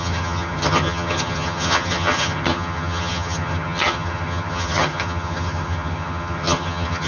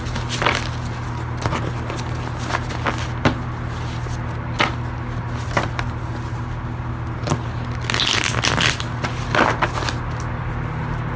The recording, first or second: second